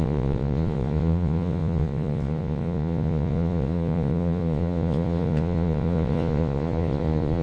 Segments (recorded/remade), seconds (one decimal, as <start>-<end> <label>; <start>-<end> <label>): 0.0-7.4 remade